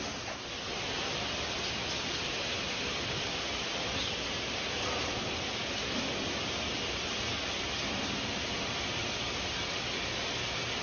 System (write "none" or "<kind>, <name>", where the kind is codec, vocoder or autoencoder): none